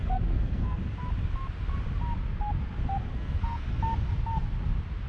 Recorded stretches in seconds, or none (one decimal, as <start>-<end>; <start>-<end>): 0.8-3.1; 3.8-5.1